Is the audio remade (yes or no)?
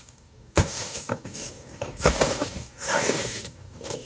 yes